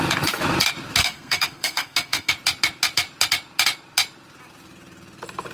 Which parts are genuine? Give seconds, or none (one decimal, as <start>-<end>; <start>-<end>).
0.0-1.0; 2.3-5.5